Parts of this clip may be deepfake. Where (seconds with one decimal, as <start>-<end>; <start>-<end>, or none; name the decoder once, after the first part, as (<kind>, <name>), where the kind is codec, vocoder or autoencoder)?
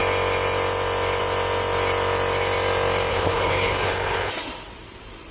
3.1-4.3 (codec, HILCodec)